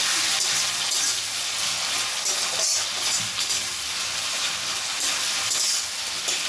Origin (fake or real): real